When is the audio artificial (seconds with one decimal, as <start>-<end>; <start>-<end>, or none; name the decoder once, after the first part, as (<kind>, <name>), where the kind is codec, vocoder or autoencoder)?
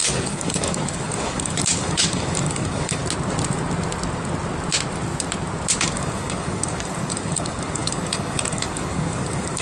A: 0.0-3.0 (codec, DAC); 5.8-9.6